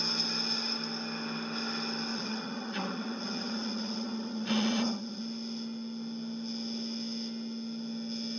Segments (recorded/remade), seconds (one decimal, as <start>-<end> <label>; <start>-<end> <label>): 0.0-2.1 recorded; 2.1-5.2 remade; 5.2-8.4 recorded